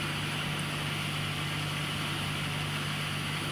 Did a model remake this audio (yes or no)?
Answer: no